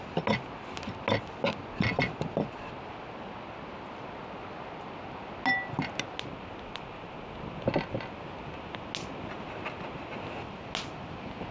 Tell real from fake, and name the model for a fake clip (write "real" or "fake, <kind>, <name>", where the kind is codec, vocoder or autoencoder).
real